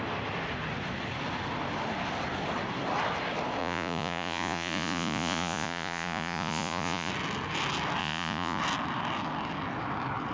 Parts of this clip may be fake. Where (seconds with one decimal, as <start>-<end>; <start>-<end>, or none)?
3.6-7.1; 8.0-8.6